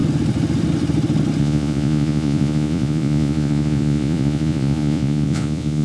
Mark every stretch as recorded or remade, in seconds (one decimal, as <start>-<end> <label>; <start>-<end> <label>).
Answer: 0.0-1.4 recorded; 1.4-5.8 remade